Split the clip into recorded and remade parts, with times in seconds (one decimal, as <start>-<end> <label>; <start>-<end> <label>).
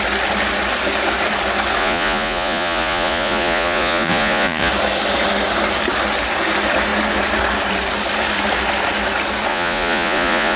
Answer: 0.0-1.8 recorded; 1.8-4.7 remade; 4.7-9.5 recorded; 9.5-10.6 remade